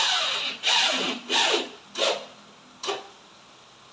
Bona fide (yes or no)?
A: yes